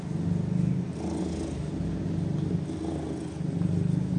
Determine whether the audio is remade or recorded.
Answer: recorded